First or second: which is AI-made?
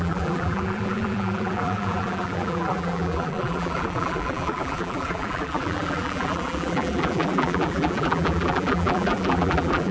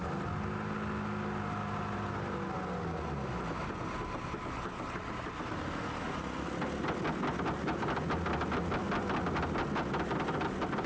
first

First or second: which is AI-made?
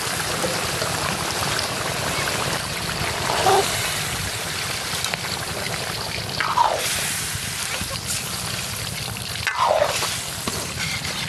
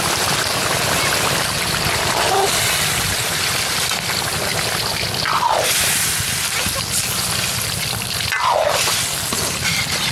first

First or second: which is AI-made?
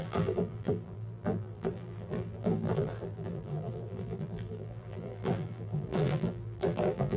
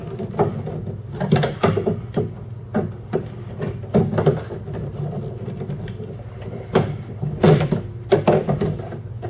first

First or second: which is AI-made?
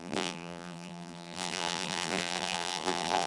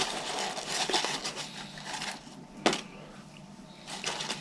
first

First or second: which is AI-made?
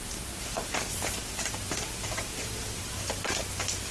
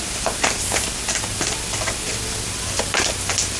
first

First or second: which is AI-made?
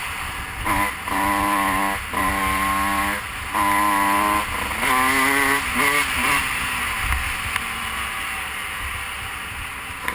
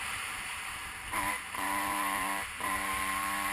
second